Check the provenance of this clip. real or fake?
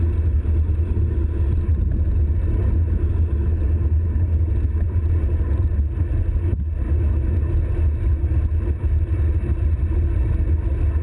real